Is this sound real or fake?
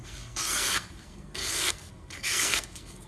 fake